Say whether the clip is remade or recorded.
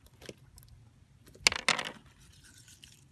recorded